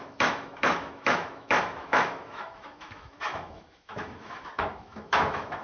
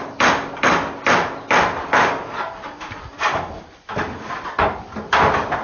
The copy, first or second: first